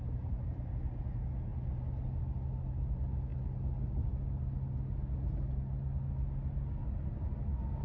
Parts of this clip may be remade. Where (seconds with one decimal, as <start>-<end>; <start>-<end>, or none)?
none